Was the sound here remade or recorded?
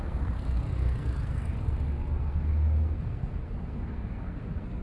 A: remade